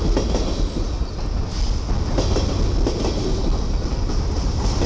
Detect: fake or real real